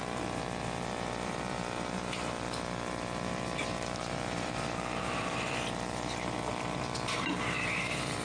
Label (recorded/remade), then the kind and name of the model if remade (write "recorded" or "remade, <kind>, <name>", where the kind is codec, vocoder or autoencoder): remade, vocoder, BigVGAN v2